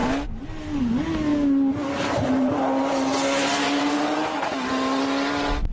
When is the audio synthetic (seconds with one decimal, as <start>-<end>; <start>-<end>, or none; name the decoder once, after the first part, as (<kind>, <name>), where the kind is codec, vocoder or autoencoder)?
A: none